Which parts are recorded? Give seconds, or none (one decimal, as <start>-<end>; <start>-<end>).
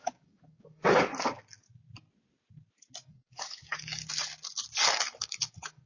1.1-3.1; 4.0-5.0